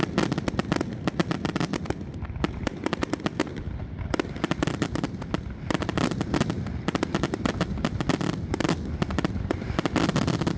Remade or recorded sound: recorded